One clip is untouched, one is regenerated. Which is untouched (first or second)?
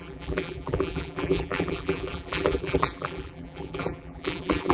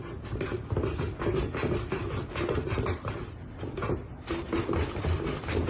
second